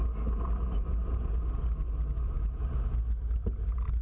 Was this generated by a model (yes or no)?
no